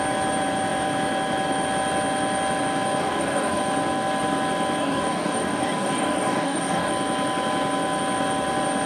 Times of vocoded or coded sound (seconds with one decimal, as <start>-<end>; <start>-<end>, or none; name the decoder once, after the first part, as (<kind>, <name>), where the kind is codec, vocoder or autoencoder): 3.0-3.6 (codec, DAC); 4.8-6.9